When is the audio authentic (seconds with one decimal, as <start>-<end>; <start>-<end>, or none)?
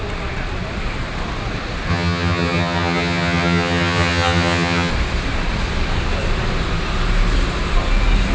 0.0-1.9; 4.9-8.3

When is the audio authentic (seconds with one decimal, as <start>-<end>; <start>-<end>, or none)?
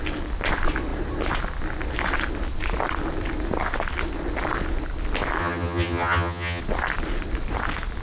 0.0-5.4; 6.6-8.0